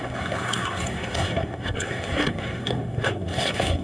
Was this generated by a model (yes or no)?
yes